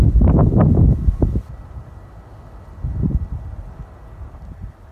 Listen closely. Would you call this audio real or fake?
real